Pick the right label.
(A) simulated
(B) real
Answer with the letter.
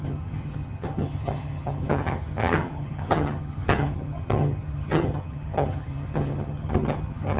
A